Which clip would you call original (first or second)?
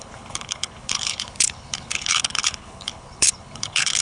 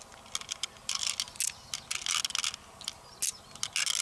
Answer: second